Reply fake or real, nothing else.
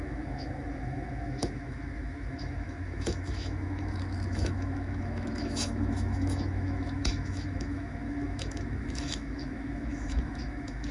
fake